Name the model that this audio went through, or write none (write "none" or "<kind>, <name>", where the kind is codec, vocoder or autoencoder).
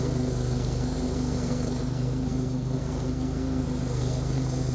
codec, SNAC